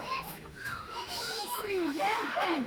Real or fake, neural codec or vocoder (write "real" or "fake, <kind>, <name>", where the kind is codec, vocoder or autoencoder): fake, autoencoder, DAC-VAE